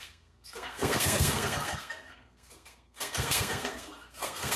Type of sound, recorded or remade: remade